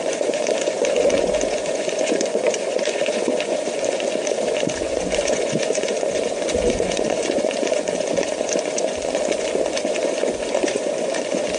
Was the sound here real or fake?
fake